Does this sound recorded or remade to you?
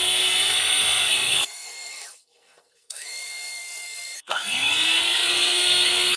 remade